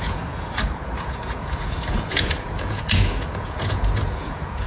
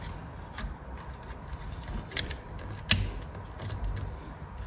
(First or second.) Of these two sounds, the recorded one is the second